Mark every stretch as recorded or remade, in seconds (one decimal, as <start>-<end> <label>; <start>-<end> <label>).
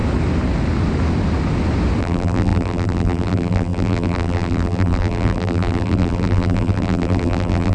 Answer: 0.0-2.0 recorded; 2.0-7.7 remade